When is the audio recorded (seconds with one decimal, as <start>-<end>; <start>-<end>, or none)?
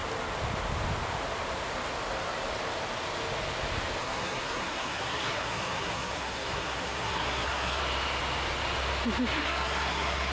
0.0-4.0; 7.8-9.4